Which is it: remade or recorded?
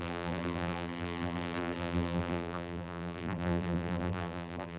remade